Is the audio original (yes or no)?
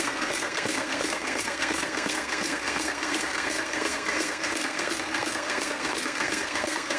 no